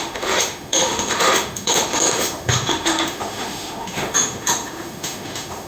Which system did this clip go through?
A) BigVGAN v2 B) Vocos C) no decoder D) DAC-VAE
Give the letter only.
D